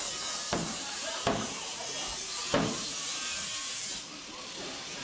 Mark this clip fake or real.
fake